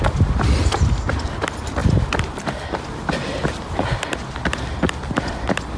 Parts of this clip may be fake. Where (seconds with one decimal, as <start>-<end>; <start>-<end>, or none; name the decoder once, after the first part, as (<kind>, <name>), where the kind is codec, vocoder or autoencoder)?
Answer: none